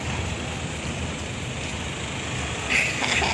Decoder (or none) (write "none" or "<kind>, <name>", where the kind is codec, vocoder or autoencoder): none